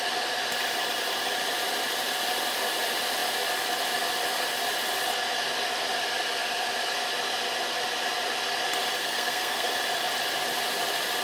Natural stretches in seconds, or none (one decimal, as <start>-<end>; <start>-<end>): 0.0-9.0; 9.7-11.2